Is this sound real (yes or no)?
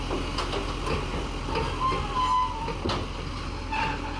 yes